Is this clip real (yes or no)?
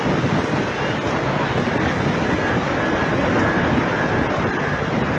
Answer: yes